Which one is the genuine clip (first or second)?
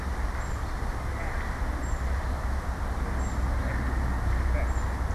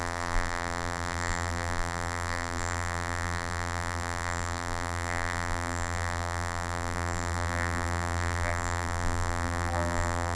first